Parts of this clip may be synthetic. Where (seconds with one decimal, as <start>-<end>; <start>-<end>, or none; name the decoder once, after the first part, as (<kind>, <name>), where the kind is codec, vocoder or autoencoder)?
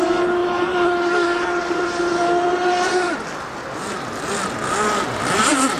none